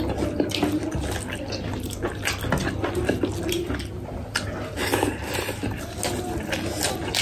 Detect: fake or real real